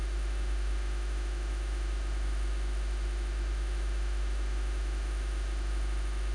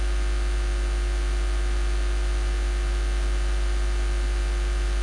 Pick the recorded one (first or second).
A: second